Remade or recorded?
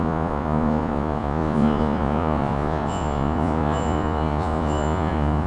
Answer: remade